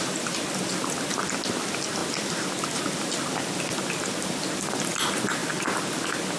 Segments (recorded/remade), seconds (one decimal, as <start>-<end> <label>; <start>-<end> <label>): 0.0-6.4 recorded